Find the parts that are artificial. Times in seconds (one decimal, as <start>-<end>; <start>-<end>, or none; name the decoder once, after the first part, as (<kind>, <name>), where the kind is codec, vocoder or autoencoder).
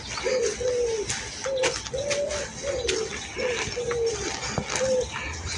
none